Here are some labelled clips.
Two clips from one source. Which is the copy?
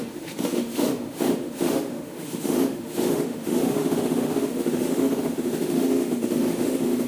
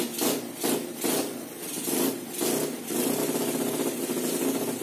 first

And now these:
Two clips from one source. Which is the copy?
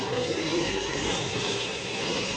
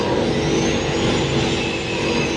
first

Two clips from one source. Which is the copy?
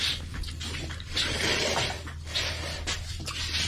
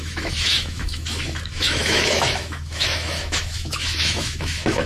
second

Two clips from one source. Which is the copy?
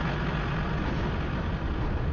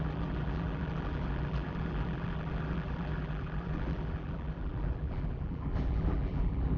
second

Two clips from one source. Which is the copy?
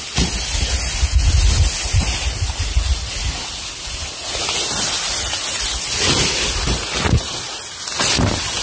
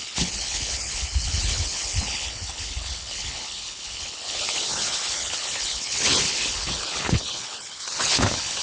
second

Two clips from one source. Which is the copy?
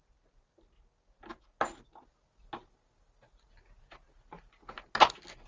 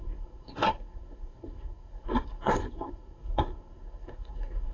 second